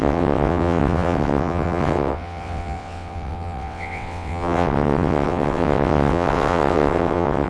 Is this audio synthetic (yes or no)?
yes